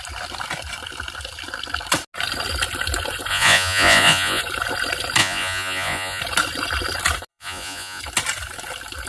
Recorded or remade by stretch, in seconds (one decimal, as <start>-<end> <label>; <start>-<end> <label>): 0.0-3.3 recorded; 3.3-4.4 remade; 4.4-5.2 recorded; 5.2-6.2 remade; 6.2-7.3 recorded; 7.3-8.0 remade; 8.0-9.1 recorded